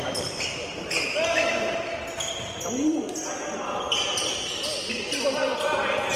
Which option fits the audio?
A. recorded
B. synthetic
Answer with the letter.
A